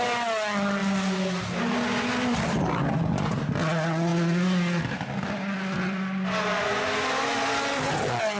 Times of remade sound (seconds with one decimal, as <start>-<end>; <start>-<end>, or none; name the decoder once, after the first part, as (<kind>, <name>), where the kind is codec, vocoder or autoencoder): none